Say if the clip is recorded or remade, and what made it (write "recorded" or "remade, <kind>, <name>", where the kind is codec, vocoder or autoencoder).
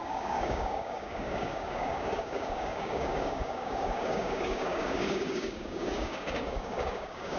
remade, codec, DAC